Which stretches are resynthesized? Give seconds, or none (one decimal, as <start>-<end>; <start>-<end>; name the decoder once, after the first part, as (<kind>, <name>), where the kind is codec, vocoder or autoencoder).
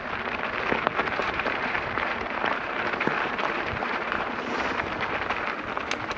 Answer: 1.2-4.9 (vocoder, BigVGAN v2)